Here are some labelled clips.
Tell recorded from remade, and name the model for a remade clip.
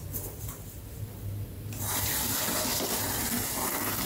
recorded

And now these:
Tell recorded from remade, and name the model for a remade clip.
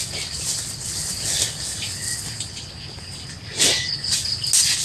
recorded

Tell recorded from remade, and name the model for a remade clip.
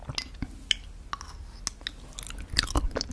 recorded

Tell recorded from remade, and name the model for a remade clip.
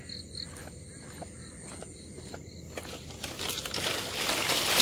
recorded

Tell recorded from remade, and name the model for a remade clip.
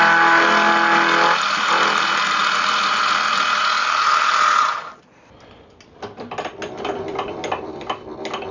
recorded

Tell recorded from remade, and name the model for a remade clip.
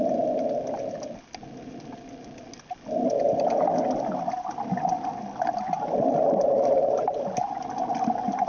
recorded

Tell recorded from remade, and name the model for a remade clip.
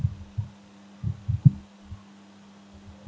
recorded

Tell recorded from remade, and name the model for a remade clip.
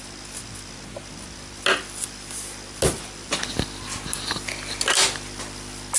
recorded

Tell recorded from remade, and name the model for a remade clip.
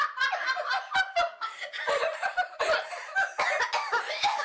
recorded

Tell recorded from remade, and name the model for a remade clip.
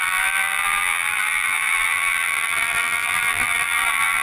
remade, vocoder, BigVGAN v2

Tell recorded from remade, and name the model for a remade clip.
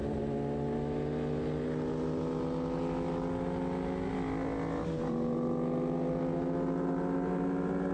recorded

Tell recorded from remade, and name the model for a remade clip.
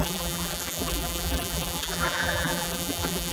remade, vocoder, BigVGAN v2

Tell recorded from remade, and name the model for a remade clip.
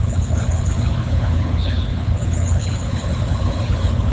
remade, codec, HILCodec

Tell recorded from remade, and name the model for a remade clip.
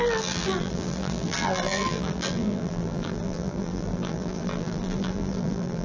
remade, vocoder, BigVGAN v2